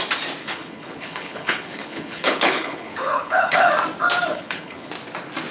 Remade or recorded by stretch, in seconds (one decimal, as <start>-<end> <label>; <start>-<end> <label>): 0.0-0.4 recorded; 0.4-3.7 remade; 3.7-4.3 recorded; 4.3-4.9 remade; 4.9-5.5 recorded